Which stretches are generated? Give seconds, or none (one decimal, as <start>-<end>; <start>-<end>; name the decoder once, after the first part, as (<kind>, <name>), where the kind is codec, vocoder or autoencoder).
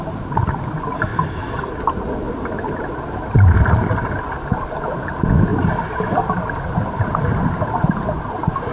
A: none